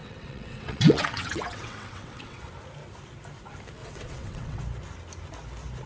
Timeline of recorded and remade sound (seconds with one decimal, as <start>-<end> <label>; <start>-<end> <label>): 0.0-2.5 remade; 2.5-3.8 recorded; 3.8-4.6 remade; 4.6-5.9 recorded